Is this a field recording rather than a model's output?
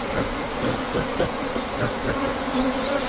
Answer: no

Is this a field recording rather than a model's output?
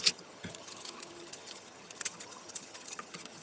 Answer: no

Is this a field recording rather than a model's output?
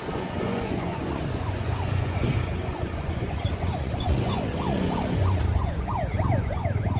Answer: no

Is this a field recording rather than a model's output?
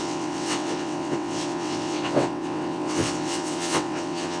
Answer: no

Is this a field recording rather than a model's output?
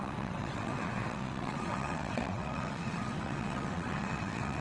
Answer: no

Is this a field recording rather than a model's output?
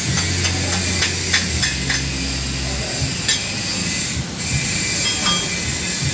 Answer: yes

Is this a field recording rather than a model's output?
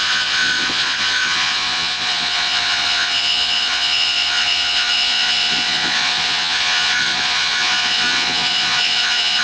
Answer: no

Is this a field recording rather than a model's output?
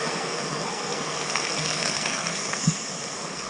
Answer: no